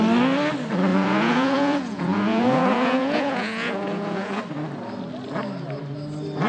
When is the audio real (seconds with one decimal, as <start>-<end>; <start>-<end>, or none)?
0.0-0.9; 4.4-6.5